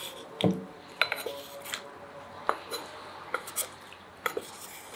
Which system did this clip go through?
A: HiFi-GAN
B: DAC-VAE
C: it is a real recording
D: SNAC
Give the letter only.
C